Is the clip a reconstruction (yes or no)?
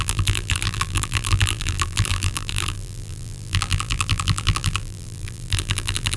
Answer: yes